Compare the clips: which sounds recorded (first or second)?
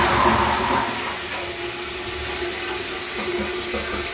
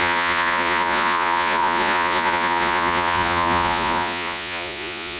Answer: first